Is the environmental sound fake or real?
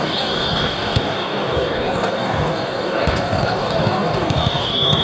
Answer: fake